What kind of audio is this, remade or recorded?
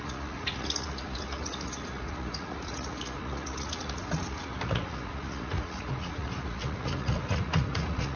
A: remade